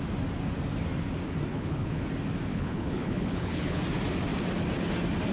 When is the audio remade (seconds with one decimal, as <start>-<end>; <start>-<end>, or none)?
1.5-2.0; 2.5-3.8